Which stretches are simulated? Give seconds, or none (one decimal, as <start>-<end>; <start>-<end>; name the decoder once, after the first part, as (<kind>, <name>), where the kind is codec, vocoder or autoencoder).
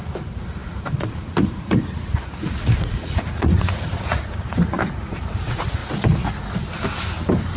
0.0-5.8 (vocoder, Vocos)